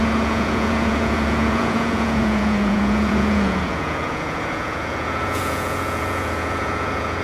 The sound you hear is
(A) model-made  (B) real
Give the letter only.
A